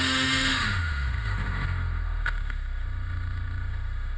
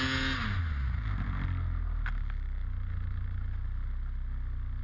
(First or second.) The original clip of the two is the second